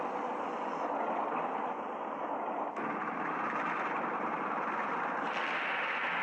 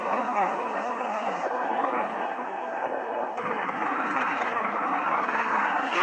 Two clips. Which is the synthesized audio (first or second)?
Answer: second